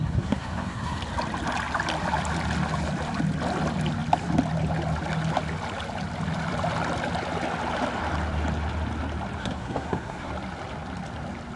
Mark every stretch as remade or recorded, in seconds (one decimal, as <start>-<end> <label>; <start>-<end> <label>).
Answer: 0.0-1.0 remade; 1.0-9.4 recorded; 9.4-10.3 remade; 10.3-11.6 recorded